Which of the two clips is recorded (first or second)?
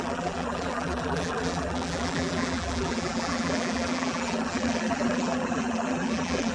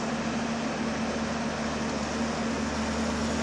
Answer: second